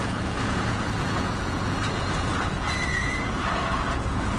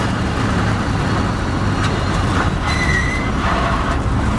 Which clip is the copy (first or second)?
first